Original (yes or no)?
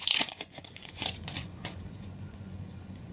no